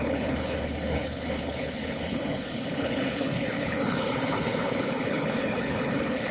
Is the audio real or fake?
fake